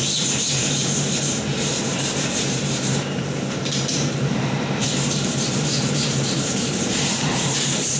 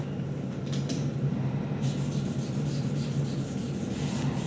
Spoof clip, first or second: first